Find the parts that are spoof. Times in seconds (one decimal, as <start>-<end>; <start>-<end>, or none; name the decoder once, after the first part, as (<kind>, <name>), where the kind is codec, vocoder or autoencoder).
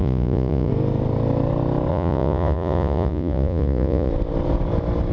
0.0-0.7 (vocoder, Vocos); 1.9-4.1